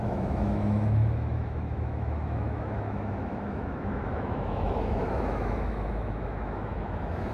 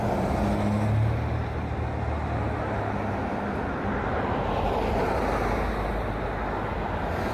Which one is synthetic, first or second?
first